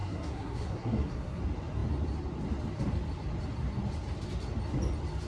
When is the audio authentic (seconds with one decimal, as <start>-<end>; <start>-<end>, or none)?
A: 1.4-5.3